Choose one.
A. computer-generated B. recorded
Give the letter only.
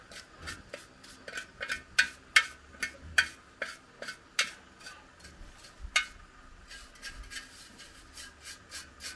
B